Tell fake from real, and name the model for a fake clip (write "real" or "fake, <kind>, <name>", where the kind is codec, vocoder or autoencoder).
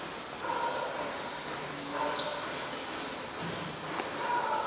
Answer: real